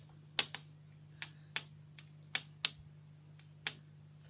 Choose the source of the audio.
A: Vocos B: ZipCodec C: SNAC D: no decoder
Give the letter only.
D